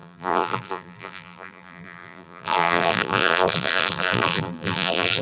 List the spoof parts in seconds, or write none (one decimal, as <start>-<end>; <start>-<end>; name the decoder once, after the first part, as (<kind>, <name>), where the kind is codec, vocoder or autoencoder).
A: 0.0-5.2 (vocoder, BigVGAN v2)